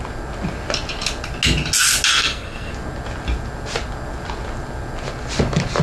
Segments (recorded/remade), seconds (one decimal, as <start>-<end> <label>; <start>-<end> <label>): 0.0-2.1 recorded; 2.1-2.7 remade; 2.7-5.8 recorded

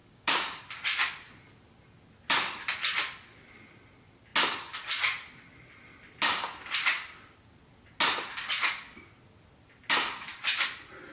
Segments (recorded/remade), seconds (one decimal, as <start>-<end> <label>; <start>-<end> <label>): 0.0-0.6 remade; 0.6-11.1 recorded

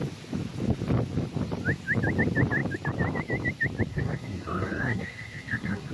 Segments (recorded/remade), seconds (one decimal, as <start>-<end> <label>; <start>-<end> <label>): 0.0-3.9 recorded; 3.9-5.9 remade